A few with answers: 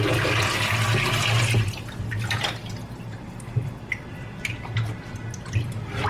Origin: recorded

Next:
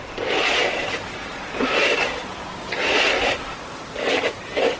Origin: remade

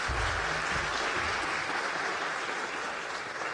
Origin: recorded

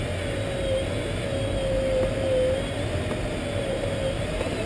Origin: recorded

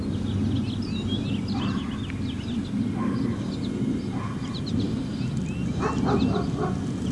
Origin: recorded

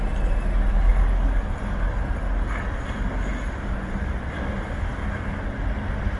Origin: recorded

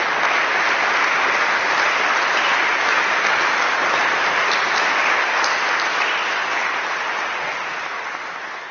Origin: recorded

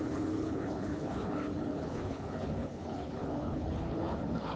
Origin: remade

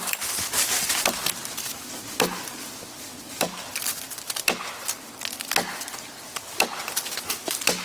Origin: recorded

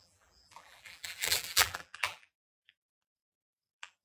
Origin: remade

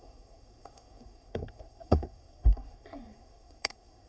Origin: remade